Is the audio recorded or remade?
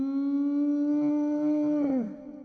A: recorded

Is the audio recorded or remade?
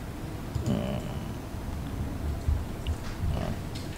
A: remade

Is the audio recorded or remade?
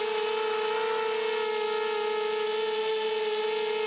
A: recorded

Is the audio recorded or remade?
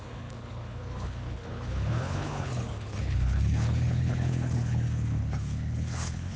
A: remade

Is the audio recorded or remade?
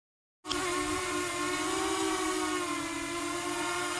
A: recorded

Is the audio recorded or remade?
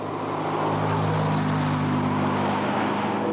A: recorded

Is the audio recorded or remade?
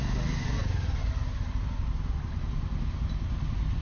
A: recorded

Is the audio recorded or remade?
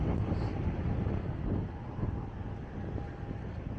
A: recorded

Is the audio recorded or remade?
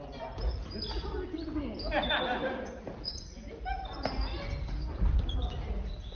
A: recorded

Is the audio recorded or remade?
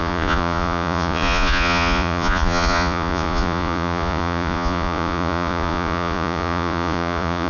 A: remade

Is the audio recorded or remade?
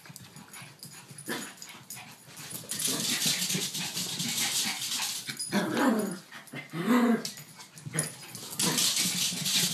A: recorded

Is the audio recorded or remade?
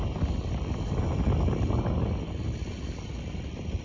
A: recorded